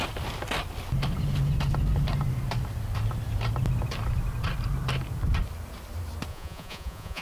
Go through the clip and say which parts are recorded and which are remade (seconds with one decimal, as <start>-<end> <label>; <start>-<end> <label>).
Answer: 0.0-6.3 recorded; 6.3-7.2 remade